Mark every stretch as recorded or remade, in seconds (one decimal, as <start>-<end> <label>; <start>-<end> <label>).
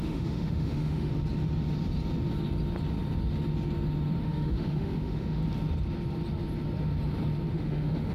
0.0-1.1 remade; 1.1-4.2 recorded; 4.2-5.4 remade; 5.4-7.5 recorded; 7.5-8.1 remade